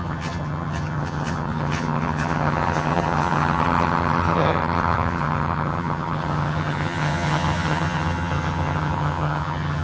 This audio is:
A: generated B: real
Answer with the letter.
A